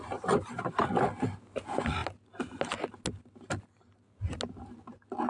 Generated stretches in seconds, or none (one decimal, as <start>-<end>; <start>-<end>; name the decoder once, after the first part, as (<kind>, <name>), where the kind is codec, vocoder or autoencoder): none